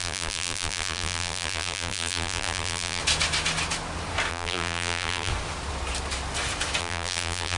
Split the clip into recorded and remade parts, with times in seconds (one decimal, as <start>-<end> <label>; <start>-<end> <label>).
0.0-3.0 remade; 3.0-4.3 recorded; 4.3-5.3 remade; 5.3-6.8 recorded; 6.8-7.6 remade

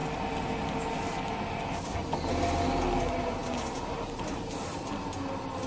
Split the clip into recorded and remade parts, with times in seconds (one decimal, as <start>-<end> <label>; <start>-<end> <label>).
0.0-5.7 recorded

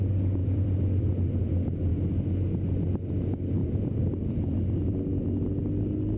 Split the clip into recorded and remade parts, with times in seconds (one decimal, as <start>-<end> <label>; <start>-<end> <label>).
0.0-0.4 recorded; 0.4-1.0 remade; 1.0-3.6 recorded; 3.6-4.9 remade; 4.9-6.2 recorded

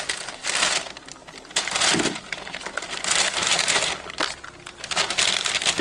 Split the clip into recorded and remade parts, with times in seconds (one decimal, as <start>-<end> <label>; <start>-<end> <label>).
0.0-5.8 recorded

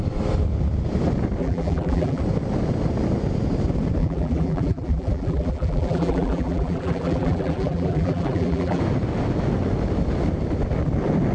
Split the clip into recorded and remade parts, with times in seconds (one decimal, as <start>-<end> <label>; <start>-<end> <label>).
0.0-1.4 recorded; 1.4-2.2 remade; 2.2-4.0 recorded; 4.0-8.8 remade; 8.8-11.3 recorded

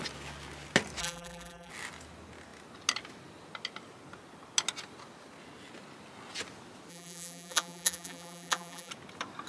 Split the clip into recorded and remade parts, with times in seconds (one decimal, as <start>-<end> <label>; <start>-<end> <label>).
0.0-1.0 recorded; 1.0-1.7 remade; 1.7-6.9 recorded; 6.9-8.9 remade; 8.9-9.5 recorded